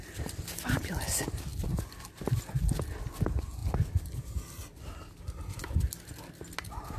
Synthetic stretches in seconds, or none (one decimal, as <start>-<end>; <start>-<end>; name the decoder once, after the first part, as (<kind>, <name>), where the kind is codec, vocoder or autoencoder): none